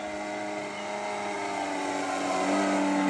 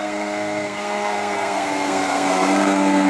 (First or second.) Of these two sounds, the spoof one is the second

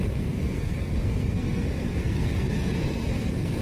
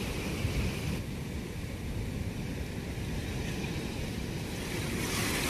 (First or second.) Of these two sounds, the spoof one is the first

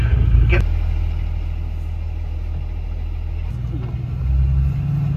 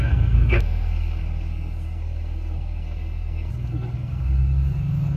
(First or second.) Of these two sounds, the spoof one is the second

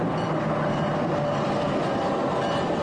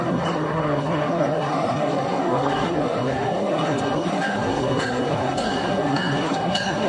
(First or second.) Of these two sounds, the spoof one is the second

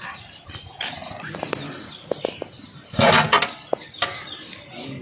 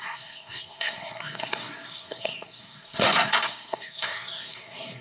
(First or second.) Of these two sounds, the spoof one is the second